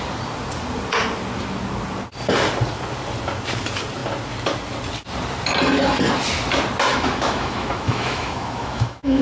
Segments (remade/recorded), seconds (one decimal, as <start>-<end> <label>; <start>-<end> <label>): 0.0-6.9 recorded; 6.9-9.2 remade